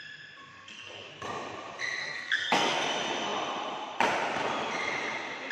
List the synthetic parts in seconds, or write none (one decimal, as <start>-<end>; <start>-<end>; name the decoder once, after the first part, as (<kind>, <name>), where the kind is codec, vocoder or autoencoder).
0.5-1.1 (codec, SNAC); 2.0-2.8